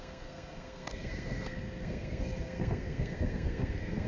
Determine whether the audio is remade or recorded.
remade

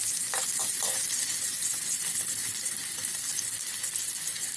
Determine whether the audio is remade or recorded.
recorded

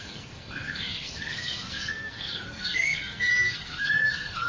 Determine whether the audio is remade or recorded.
remade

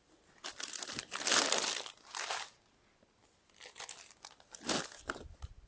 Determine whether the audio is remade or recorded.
recorded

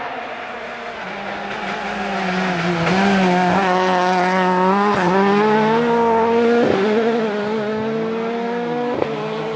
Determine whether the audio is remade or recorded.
recorded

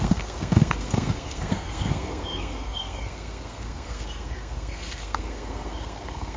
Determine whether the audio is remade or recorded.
remade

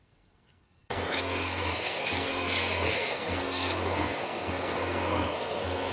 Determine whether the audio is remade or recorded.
remade